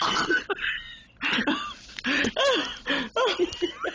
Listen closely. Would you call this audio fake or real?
real